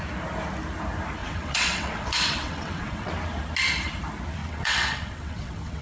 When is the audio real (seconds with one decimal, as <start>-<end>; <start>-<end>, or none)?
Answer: 0.0-1.2; 3.1-4.4